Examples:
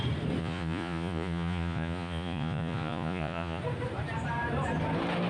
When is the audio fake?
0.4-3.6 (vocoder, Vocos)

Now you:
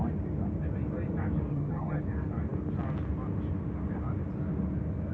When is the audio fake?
1.5-2.0 (vocoder, HiFi-GAN)

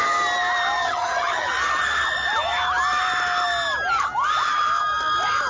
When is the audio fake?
0.8-1.5 (vocoder, HiFi-GAN)

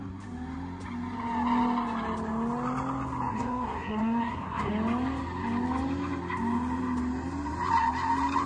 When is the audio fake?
3.3-4.7 (codec, SNAC)

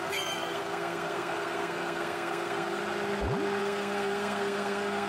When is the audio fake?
0.0-2.8 (codec, SNAC); 3.6-5.1

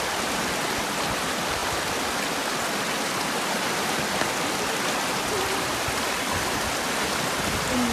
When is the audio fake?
none

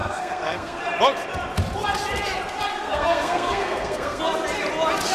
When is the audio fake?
0.0-0.8 (codec, SNAC); 2.7-4.2